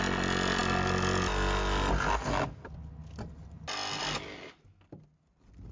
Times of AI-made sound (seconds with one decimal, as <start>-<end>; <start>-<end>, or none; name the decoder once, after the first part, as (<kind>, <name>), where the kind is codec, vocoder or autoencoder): none